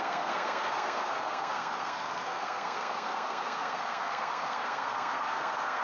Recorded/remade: remade